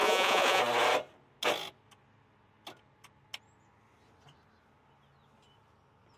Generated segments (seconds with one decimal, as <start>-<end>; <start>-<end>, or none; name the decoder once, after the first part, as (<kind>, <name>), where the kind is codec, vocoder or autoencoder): 0.0-0.6 (vocoder, Vocos)